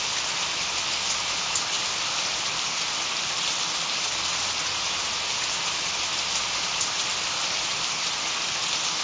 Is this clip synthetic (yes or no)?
no